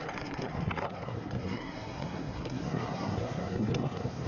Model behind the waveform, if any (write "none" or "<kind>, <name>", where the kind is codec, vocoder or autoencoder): codec, SNAC